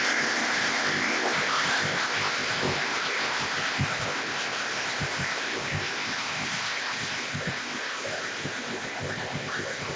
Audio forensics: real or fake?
fake